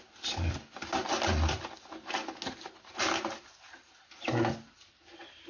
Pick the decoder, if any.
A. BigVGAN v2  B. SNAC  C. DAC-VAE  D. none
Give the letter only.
D